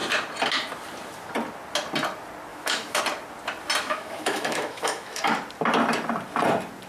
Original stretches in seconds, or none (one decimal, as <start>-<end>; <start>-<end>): 0.0-2.5; 3.0-3.8; 5.2-6.9